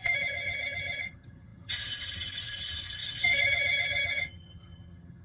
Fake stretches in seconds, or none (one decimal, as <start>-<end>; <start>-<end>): 0.0-5.2